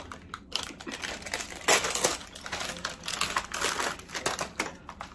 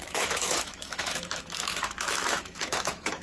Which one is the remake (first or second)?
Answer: second